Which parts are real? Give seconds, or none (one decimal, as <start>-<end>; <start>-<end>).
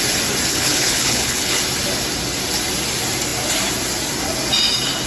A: 0.0-0.5; 1.6-5.1